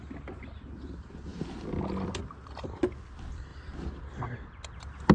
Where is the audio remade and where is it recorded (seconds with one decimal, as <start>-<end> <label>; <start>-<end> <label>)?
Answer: 0.0-3.5 recorded; 3.5-4.2 remade; 4.2-5.1 recorded